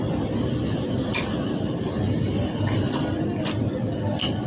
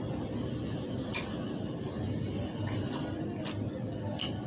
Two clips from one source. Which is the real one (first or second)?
second